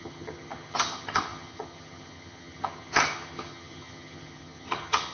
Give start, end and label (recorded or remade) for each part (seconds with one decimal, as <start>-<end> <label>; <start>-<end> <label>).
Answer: 0.0-5.1 remade